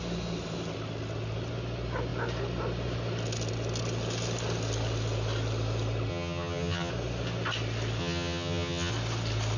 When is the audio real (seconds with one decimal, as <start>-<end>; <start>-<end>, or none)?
0.0-6.1; 6.9-8.0; 8.9-9.6